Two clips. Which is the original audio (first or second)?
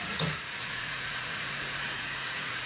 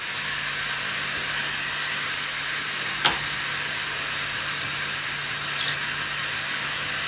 second